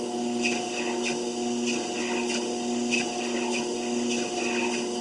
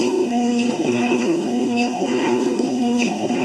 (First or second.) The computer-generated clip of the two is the second